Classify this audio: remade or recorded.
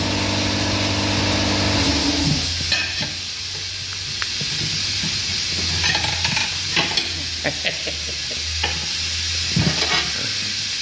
recorded